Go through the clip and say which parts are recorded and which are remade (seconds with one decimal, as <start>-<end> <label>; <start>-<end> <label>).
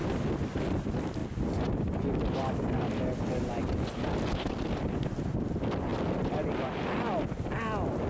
0.0-8.1 recorded